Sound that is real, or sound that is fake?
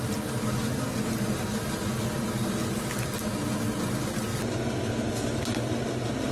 real